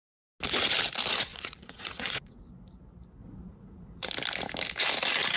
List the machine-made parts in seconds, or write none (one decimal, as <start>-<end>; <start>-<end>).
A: 1.3-2.4; 3.2-4.1